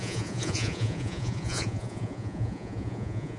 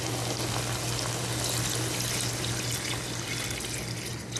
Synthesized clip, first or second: first